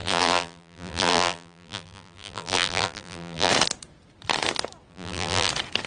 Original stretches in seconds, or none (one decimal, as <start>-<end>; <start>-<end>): 3.5-4.9; 5.5-5.9